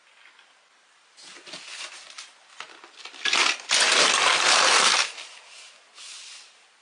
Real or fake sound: real